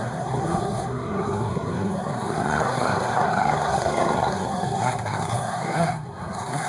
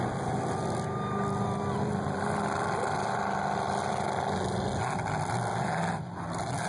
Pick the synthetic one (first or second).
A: first